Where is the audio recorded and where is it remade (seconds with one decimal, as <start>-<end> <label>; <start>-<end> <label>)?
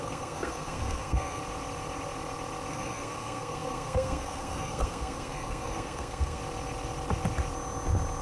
0.0-1.4 remade; 1.4-2.7 recorded; 2.7-6.4 remade; 6.4-8.2 recorded